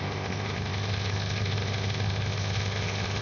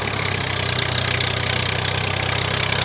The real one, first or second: second